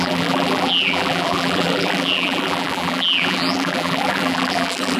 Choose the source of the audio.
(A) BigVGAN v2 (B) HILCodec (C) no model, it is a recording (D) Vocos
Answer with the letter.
A